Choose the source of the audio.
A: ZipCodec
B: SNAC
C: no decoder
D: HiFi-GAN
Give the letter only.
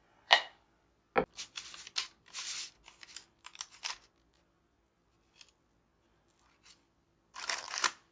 C